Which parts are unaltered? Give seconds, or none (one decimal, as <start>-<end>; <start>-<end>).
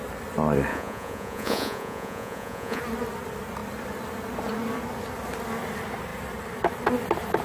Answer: 0.0-0.7; 2.8-7.4